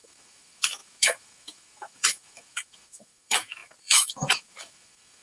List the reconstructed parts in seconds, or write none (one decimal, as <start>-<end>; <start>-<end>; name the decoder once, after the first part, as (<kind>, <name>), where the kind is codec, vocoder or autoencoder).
0.0-5.2 (autoencoder, DAC-VAE)